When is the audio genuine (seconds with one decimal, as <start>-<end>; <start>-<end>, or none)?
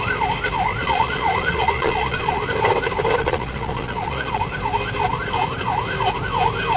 0.0-0.8; 2.4-3.2; 4.4-6.8